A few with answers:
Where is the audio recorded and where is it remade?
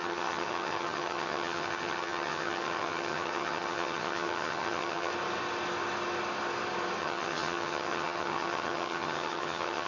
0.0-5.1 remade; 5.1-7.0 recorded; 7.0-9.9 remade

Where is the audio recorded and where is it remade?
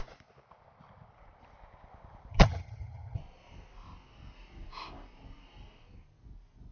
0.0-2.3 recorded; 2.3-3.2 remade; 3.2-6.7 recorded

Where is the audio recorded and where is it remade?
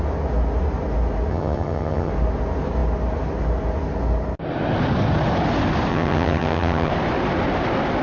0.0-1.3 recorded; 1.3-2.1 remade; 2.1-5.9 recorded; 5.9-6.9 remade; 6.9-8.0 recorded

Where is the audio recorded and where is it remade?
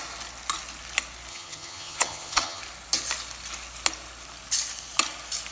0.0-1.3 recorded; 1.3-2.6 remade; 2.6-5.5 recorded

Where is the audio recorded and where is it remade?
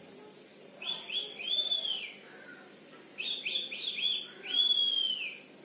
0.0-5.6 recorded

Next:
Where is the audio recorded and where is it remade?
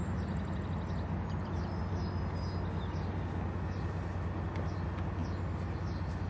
0.0-6.3 recorded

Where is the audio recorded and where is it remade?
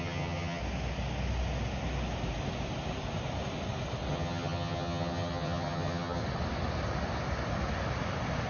0.0-0.6 remade; 0.6-4.1 recorded; 4.1-6.2 remade; 6.2-8.5 recorded